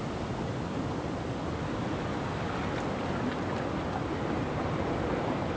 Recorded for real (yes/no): yes